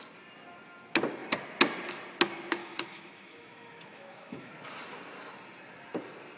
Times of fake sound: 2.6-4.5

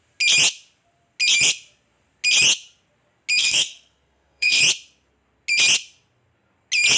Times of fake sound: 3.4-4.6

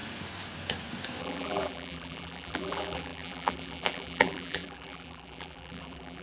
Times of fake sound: 1.2-6.2